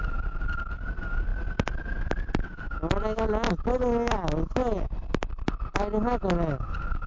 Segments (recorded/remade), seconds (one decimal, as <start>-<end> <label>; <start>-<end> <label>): 0.0-7.1 recorded